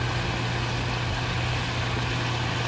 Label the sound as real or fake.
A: real